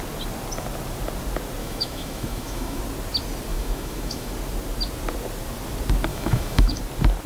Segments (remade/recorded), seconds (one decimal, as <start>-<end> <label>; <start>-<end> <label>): 0.0-1.6 recorded; 1.6-2.8 remade; 2.8-3.5 recorded; 3.5-4.3 remade; 4.3-6.1 recorded; 6.1-6.8 remade; 6.8-7.3 recorded